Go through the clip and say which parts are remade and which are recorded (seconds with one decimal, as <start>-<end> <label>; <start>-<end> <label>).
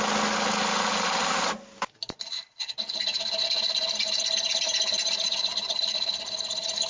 0.0-6.9 recorded